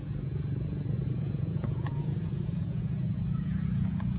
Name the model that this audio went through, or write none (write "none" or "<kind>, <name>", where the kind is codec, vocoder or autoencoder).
vocoder, Vocos